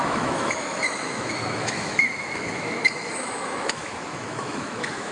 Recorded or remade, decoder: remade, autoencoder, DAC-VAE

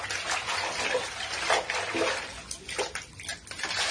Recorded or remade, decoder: recorded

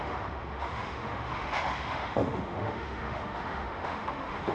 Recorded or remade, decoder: remade, autoencoder, DAC-VAE